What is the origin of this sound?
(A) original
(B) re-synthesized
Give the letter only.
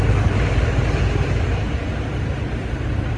A